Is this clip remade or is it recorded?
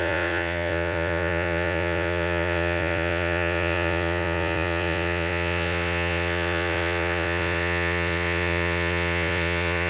remade